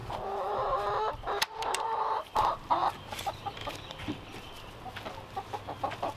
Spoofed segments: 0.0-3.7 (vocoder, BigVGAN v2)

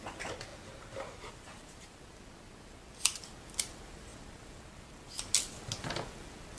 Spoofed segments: none

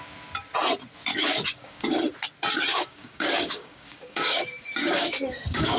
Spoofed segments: 1.1-2.0 (codec, DAC); 2.7-5.8

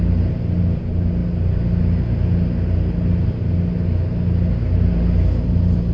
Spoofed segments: none

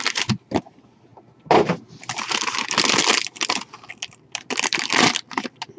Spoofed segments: none